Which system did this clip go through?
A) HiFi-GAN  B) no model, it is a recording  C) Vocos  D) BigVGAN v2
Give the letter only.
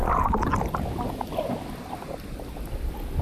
B